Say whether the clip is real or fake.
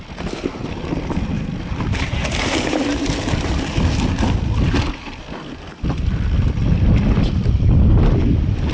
real